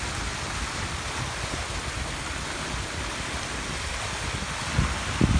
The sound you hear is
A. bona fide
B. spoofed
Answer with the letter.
A